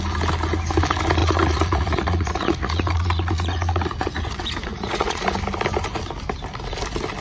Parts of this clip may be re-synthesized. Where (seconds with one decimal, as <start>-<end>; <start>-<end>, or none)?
1.2-5.4